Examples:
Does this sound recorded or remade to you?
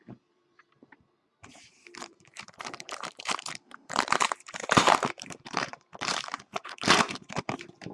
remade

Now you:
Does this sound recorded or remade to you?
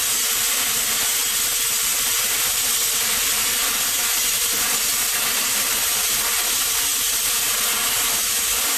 recorded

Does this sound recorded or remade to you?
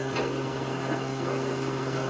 remade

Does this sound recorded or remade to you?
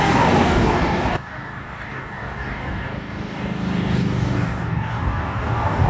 remade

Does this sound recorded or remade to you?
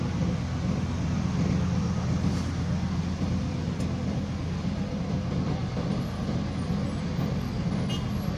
recorded